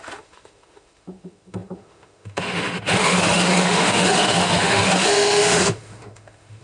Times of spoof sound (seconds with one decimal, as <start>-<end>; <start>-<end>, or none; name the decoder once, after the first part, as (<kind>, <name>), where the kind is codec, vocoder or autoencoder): 0.0-6.6 (autoencoder, DAC-VAE)